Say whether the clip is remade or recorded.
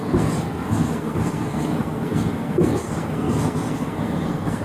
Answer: remade